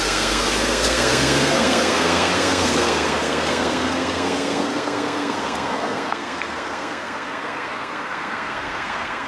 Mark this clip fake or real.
fake